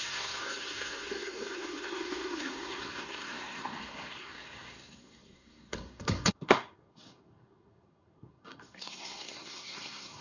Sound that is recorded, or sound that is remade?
remade